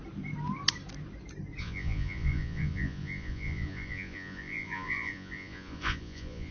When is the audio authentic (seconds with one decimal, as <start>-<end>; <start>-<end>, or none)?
0.0-1.6